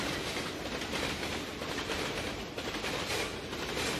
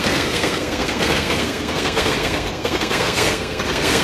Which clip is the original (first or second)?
first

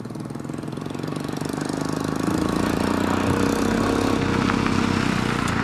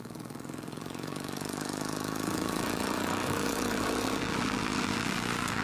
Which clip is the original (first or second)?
first